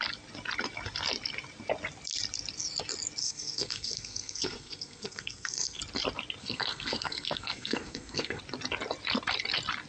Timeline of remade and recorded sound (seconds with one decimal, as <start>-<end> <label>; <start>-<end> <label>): 0.0-3.2 recorded; 3.2-5.8 remade; 5.8-6.4 recorded; 6.4-8.4 remade; 8.4-9.9 recorded